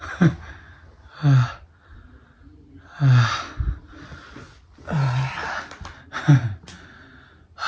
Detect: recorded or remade recorded